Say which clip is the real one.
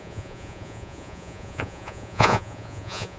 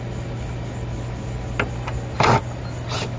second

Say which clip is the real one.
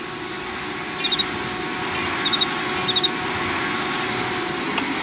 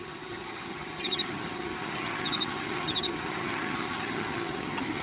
first